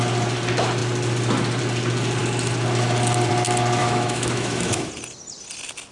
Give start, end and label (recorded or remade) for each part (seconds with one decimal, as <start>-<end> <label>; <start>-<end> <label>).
0.0-3.8 recorded; 3.8-4.9 remade; 4.9-5.9 recorded